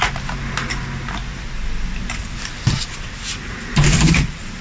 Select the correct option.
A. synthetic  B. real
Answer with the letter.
B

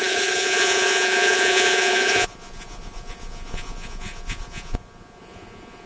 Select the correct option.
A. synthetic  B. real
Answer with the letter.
A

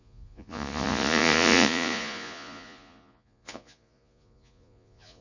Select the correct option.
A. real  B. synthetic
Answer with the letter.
B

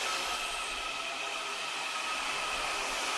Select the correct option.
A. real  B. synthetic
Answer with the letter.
A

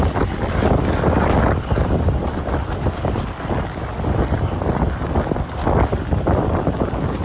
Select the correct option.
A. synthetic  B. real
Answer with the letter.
B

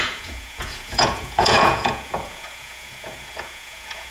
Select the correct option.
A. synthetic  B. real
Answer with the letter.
A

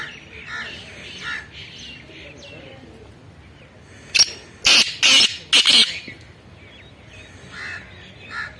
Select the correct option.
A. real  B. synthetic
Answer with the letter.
A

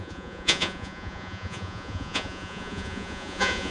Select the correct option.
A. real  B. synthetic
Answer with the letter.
B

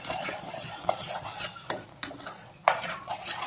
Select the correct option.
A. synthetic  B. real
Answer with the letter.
A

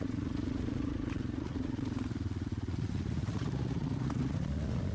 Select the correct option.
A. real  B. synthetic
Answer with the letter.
B